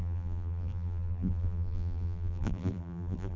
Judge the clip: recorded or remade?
remade